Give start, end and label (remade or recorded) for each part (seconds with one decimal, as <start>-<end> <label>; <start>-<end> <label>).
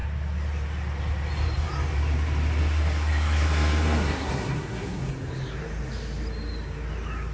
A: 0.0-2.6 recorded; 2.6-5.1 remade; 5.1-7.3 recorded